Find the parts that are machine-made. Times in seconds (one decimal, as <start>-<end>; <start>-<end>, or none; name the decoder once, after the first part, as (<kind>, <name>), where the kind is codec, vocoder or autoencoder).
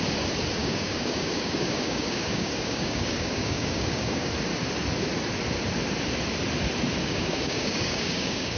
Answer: 0.6-4.3 (codec, DAC); 7.0-8.6